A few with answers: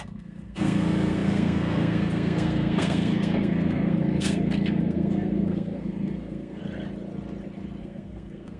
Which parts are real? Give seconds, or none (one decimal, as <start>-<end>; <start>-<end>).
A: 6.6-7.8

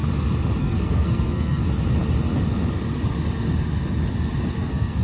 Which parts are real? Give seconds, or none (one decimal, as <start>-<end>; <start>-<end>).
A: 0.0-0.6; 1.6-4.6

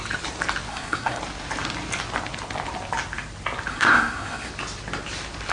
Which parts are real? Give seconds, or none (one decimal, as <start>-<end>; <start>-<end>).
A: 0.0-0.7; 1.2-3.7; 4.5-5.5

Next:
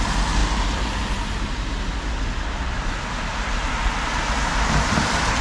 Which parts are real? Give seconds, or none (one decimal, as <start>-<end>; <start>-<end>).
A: 0.0-5.4

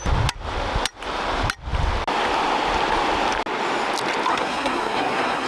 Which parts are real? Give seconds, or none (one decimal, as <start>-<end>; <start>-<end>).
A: 0.0-4.3